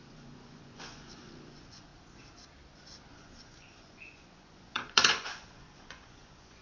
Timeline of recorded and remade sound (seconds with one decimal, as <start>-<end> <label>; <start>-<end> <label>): 0.0-1.9 remade; 1.9-3.1 recorded; 3.1-6.6 remade